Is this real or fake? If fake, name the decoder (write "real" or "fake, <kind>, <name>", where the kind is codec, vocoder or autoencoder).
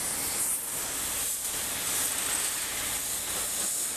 real